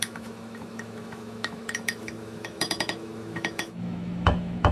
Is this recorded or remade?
remade